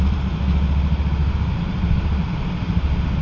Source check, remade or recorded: recorded